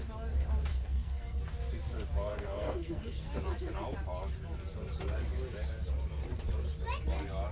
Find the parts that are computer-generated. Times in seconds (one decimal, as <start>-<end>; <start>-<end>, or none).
0.7-1.4; 2.3-3.3